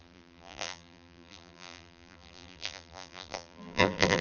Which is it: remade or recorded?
remade